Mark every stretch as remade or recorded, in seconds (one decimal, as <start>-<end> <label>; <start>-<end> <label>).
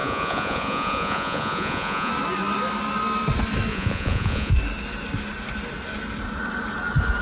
0.0-2.1 remade; 2.1-3.7 recorded; 3.7-4.5 remade; 4.5-7.2 recorded